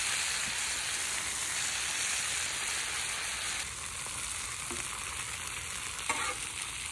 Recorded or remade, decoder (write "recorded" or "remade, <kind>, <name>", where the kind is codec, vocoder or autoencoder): recorded